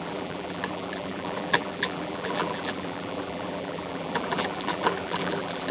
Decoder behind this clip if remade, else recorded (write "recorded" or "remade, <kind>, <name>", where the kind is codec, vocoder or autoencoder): remade, vocoder, BigVGAN v2